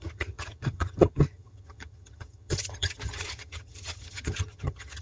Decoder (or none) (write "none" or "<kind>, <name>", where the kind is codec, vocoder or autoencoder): vocoder, HiFi-GAN